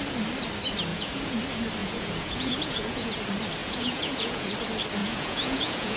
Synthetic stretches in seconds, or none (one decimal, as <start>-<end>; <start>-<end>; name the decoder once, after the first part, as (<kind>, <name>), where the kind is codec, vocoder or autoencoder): 0.9-1.4 (vocoder, Vocos); 1.8-3.1; 3.6-4.5; 5.0-6.0